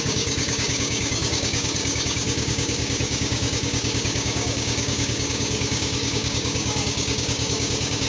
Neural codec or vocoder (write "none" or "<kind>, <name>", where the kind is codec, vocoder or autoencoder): codec, DAC